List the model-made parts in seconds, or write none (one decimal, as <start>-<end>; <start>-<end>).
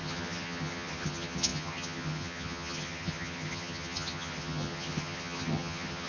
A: 0.0-6.1